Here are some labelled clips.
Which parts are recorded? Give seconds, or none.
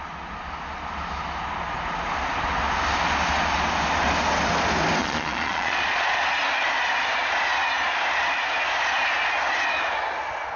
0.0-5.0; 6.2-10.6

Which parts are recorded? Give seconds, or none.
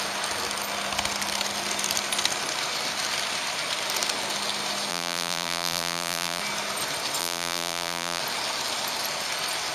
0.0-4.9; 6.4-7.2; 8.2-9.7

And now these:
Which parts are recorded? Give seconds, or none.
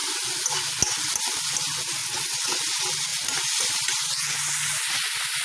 0.0-2.0; 2.6-5.4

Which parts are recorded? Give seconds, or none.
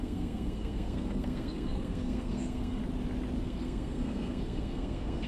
2.8-3.4